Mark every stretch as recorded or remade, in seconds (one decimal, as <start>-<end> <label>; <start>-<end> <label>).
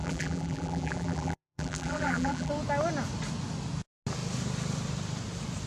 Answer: 0.0-2.5 remade; 2.5-5.7 recorded